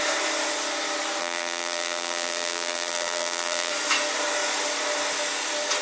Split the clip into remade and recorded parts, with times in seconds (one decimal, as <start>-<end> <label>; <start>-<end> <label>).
0.0-1.2 recorded; 1.2-3.7 remade; 3.7-5.8 recorded